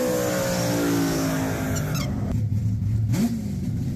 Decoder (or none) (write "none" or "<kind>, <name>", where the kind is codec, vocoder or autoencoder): none